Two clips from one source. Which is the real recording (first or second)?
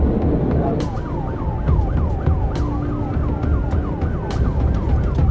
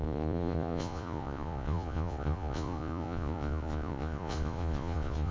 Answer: first